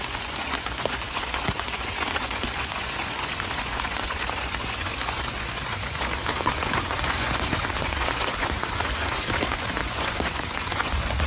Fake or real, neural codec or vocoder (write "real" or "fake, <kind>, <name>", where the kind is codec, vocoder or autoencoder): fake, vocoder, Vocos